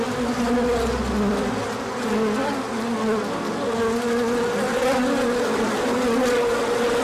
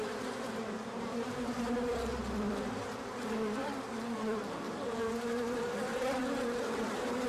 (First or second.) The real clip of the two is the first